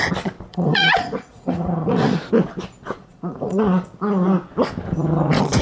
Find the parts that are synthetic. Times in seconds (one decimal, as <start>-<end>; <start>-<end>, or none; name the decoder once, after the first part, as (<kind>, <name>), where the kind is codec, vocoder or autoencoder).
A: 0.5-2.2 (vocoder, Vocos); 3.0-3.8